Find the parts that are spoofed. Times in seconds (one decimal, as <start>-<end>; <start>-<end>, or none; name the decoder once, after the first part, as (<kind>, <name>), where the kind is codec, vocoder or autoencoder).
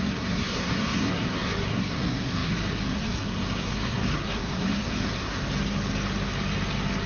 0.0-5.4 (codec, SNAC)